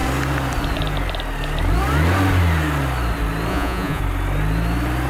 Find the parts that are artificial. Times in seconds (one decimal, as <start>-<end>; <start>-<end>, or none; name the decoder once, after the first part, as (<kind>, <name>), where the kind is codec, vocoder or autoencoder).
3.5-4.0 (vocoder, Vocos)